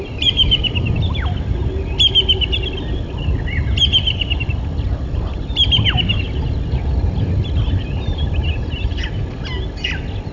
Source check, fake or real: real